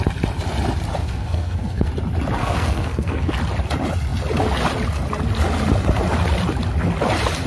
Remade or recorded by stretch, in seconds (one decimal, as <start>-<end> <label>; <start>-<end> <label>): 0.0-1.0 recorded; 1.0-1.9 remade; 1.9-2.4 recorded; 2.4-3.3 remade; 3.3-7.5 recorded